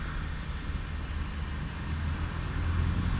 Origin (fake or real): real